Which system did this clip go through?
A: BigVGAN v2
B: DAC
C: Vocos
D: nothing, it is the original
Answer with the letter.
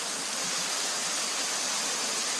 D